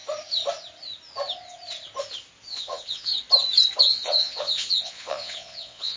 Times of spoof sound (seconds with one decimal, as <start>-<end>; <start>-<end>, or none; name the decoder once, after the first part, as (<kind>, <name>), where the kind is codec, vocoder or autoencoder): 2.5-3.1 (vocoder, Vocos); 3.8-6.0